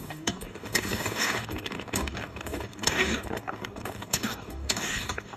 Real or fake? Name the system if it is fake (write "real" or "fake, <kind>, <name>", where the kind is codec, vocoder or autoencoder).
fake, codec, DAC